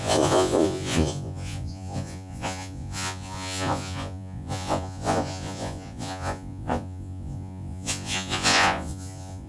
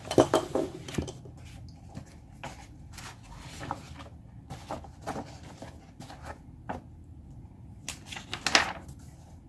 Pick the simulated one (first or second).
first